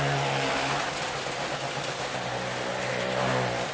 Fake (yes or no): no